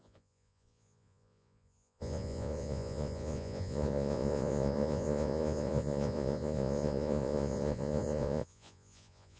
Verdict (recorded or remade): remade